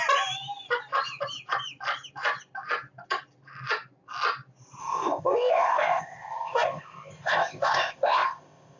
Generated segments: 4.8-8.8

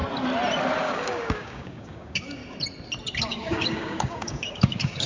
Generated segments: 0.8-2.4; 3.3-5.1